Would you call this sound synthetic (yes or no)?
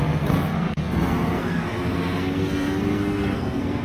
yes